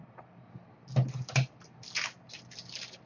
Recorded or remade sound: recorded